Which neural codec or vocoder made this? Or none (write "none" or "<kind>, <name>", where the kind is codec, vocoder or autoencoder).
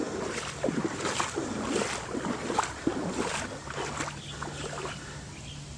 none